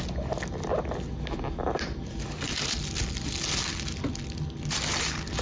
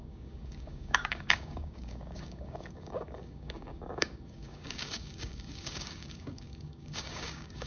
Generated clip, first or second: second